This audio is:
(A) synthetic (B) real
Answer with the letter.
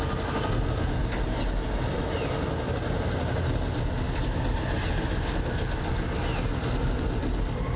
B